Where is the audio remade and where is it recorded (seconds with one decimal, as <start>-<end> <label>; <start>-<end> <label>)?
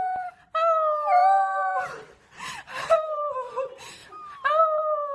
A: 0.0-1.2 recorded; 1.2-1.8 remade; 1.8-3.0 recorded; 3.0-3.5 remade; 3.5-5.1 recorded